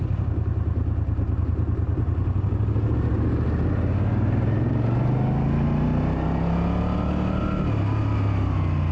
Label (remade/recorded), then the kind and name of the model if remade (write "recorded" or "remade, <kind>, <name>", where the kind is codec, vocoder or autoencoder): recorded